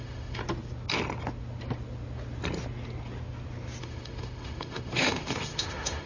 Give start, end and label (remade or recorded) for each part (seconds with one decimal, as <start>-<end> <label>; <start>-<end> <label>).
0.0-0.4 remade; 0.4-3.8 recorded; 3.8-6.1 remade